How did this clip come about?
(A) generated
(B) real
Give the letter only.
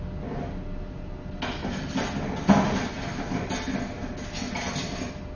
B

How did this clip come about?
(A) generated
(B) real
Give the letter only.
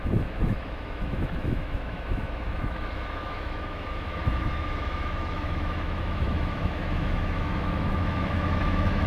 A